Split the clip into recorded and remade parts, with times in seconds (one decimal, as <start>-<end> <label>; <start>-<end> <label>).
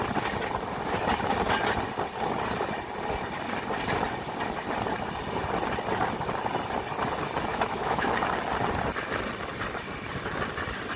0.0-7.5 recorded; 7.5-8.1 remade; 8.1-11.0 recorded